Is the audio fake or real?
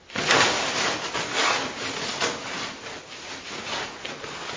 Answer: fake